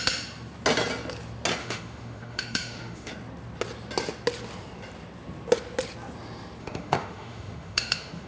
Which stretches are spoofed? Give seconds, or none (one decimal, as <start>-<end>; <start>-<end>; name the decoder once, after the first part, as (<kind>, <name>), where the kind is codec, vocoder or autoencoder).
1.6-3.1 (autoencoder, DAC-VAE); 6.6-8.3